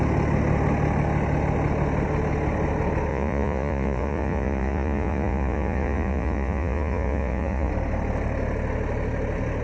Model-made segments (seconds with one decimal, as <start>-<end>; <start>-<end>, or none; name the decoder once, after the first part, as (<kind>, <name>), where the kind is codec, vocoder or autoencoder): 3.1-7.7 (vocoder, Vocos)